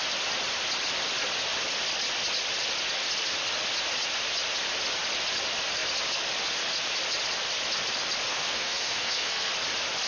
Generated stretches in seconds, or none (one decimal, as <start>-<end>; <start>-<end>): 8.3-9.5

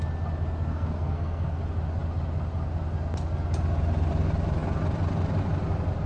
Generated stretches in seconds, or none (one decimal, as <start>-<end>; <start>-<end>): 0.7-1.6

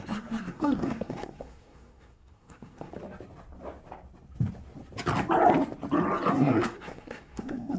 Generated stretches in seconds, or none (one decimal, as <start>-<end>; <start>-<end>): 0.0-2.9; 6.3-7.8

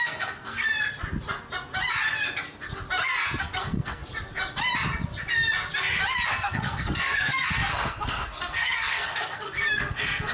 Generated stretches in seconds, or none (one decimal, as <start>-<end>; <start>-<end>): 0.0-0.7; 3.4-4.0; 6.3-10.3

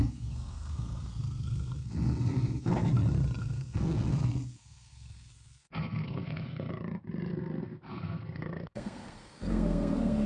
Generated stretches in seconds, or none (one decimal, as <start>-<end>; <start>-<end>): 0.0-2.9; 3.4-6.7; 7.3-10.3

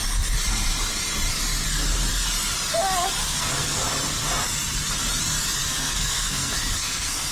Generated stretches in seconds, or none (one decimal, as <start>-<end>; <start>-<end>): 3.2-3.8; 5.6-7.3